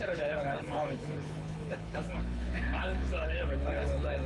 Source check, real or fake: fake